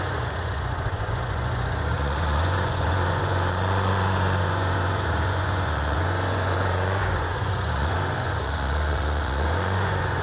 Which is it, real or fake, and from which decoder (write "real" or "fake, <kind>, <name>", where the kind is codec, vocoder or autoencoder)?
fake, vocoder, Vocos